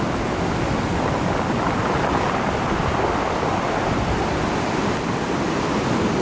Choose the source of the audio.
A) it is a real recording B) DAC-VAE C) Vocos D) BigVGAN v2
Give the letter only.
A